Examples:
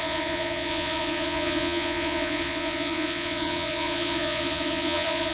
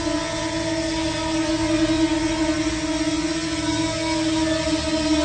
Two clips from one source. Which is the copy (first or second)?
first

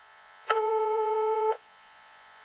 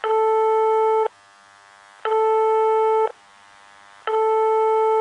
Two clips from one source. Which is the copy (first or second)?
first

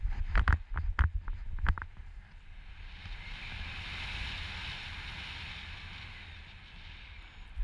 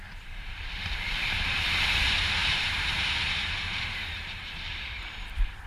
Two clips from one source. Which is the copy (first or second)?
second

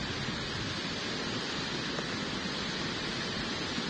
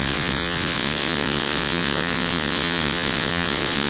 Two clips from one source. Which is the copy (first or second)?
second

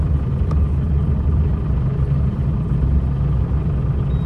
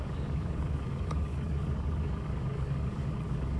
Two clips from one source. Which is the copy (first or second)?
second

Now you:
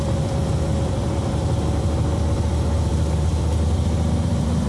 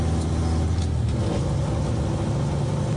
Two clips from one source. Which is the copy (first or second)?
first